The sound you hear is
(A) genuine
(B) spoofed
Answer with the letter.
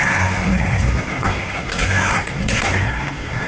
B